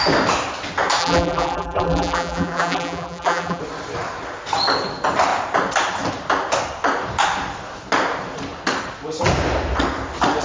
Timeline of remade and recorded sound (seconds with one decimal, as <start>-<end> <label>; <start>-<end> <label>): 0.0-1.0 recorded; 1.0-3.6 remade; 3.6-10.4 recorded